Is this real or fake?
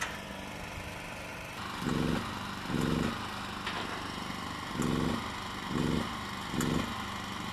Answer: real